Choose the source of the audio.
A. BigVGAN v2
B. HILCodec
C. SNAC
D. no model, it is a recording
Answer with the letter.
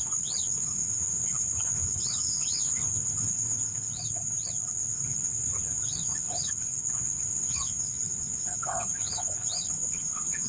B